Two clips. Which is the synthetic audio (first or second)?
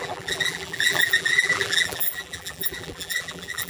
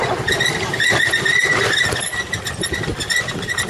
first